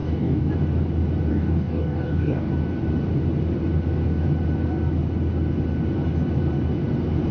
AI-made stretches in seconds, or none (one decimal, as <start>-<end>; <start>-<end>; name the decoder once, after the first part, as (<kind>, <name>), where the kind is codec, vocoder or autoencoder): 0.0-0.5 (codec, DAC); 1.3-2.5

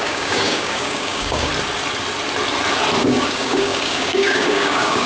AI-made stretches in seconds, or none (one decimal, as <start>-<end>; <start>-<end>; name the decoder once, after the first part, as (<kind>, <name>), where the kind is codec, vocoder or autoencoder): 0.0-1.5 (codec, DAC); 3.0-5.1

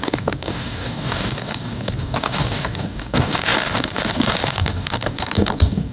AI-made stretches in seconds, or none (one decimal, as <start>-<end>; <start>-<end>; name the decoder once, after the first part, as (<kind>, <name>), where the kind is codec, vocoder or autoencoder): 0.0-5.9 (codec, DAC)

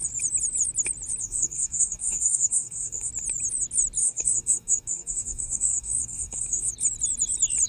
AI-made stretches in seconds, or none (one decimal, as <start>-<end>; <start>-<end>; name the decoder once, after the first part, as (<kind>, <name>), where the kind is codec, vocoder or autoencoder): 1.2-3.1 (codec, DAC); 4.0-6.7

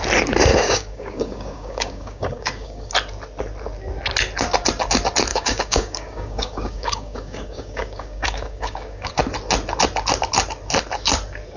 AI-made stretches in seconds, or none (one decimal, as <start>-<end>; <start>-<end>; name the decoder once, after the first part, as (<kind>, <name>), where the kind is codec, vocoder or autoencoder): 0.5-2.9 (codec, DAC); 5.3-9.1

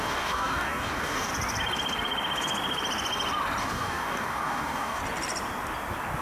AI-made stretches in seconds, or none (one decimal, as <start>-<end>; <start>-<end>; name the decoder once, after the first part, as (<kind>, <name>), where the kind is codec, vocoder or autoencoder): 0.0-1.3 (codec, DAC); 3.6-5.0